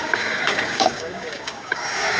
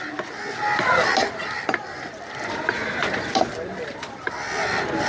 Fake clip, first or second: first